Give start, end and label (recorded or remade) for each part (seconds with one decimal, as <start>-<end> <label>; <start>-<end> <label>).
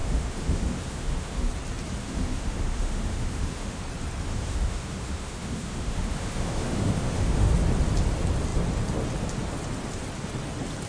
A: 0.0-1.5 remade; 1.5-2.0 recorded; 2.0-3.8 remade; 3.8-4.3 recorded; 4.3-7.5 remade; 7.5-10.9 recorded